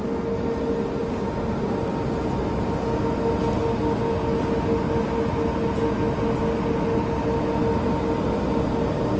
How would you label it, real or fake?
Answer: real